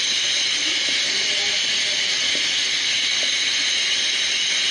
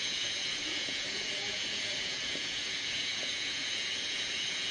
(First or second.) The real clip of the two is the first